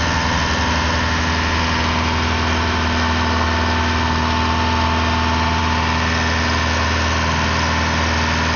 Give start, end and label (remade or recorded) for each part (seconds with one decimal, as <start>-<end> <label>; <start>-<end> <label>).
0.0-8.6 recorded